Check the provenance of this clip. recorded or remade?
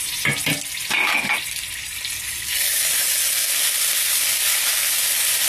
recorded